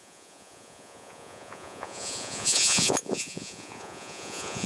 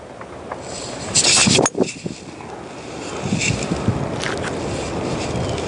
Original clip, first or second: second